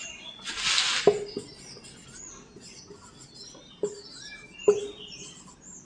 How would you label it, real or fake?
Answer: real